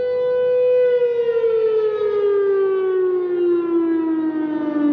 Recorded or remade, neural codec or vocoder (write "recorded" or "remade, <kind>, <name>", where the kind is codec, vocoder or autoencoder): recorded